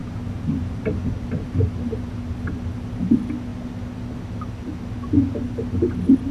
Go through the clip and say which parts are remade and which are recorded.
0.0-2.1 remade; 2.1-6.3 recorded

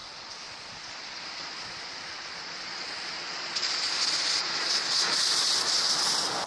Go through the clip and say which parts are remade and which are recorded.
0.0-3.9 remade; 3.9-4.4 recorded; 4.4-5.5 remade; 5.5-6.5 recorded

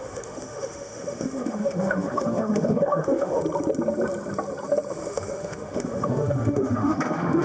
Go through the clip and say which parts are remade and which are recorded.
0.0-3.4 remade; 3.4-4.9 recorded; 4.9-7.4 remade

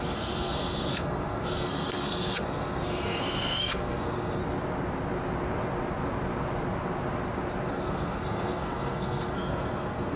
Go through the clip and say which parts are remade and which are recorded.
0.0-4.4 remade; 4.4-7.7 recorded; 7.7-10.2 remade

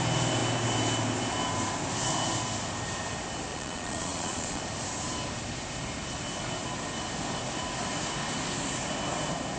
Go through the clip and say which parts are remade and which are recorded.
0.0-3.5 recorded; 3.5-4.6 remade; 4.6-9.6 recorded

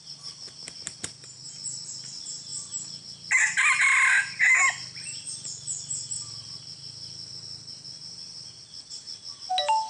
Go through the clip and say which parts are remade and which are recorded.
0.0-9.9 recorded

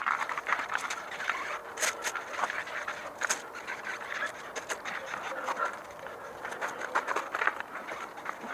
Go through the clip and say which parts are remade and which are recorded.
0.0-8.5 recorded

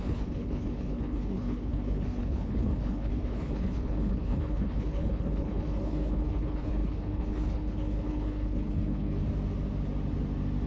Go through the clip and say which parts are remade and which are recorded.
0.0-9.2 remade; 9.2-10.7 recorded